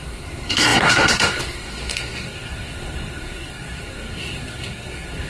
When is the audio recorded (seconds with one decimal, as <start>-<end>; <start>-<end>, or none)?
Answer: none